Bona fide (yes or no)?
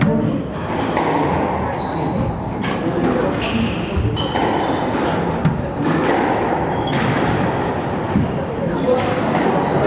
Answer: yes